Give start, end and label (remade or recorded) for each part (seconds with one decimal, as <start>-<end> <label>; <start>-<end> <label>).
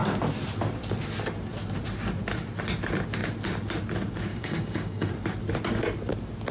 0.0-4.3 recorded; 4.3-5.1 remade; 5.1-6.5 recorded